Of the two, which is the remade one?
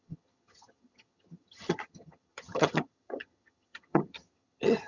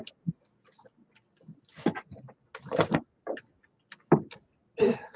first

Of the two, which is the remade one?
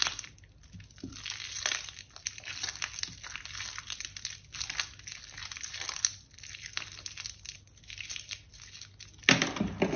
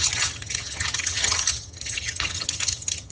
second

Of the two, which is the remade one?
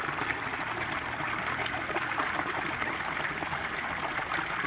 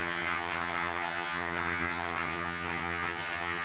second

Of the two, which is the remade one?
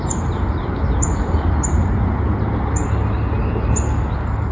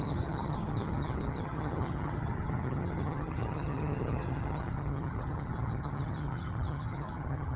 second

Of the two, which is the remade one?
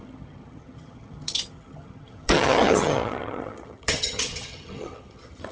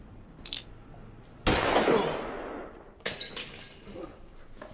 first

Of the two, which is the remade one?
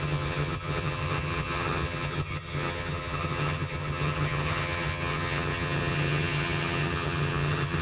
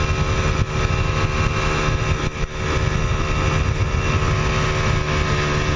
first